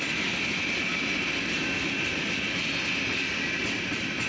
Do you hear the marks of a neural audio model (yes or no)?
no